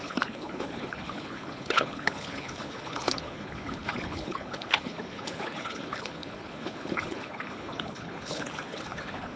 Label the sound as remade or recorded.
remade